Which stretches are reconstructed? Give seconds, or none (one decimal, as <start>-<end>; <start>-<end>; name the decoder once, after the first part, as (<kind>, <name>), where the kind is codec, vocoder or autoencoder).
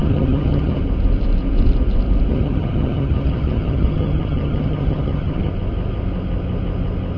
0.0-0.8 (vocoder, HiFi-GAN); 2.3-5.5